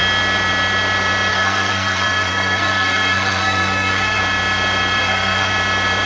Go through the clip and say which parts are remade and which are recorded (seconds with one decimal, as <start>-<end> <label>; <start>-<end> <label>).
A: 0.0-1.3 recorded; 1.3-4.2 remade; 4.2-5.0 recorded; 5.0-5.5 remade; 5.5-6.1 recorded